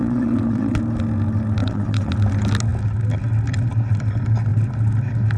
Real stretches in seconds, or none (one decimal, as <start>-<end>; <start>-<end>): 0.8-1.6; 2.1-5.4